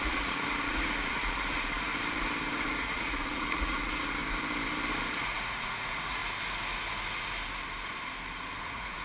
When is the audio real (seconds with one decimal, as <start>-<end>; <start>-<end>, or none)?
1.9-2.5; 4.2-5.0; 6.2-8.6